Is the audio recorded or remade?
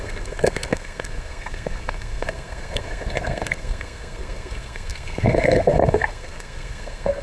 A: remade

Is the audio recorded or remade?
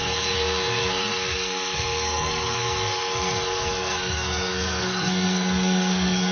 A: remade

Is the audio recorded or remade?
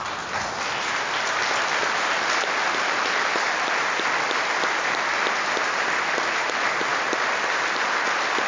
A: recorded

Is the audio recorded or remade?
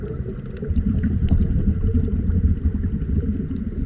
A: recorded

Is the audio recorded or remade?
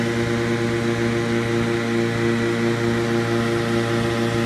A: recorded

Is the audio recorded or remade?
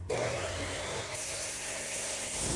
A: remade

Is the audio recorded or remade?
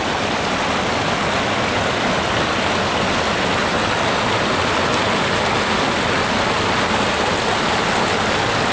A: recorded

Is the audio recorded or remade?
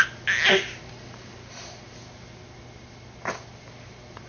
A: recorded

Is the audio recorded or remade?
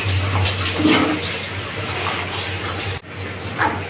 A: recorded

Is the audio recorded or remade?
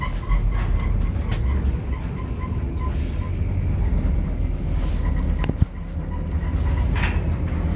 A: recorded